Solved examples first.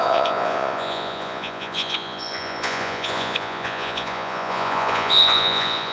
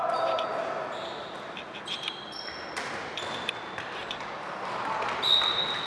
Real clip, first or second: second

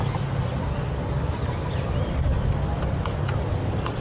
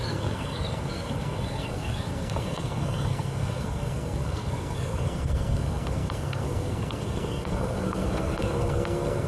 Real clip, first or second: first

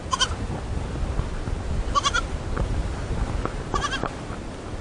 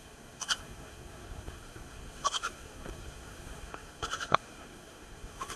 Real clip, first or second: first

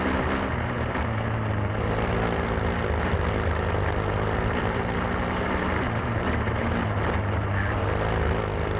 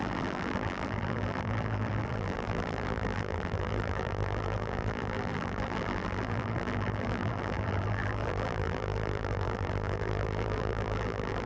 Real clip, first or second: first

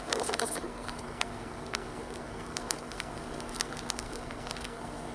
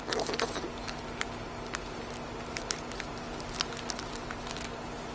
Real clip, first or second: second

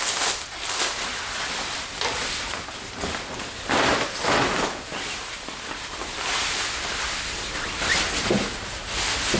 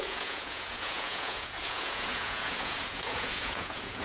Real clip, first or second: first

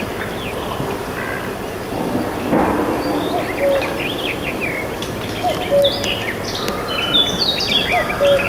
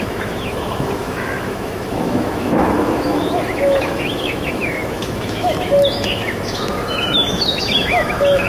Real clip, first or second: first